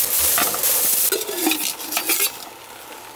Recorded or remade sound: recorded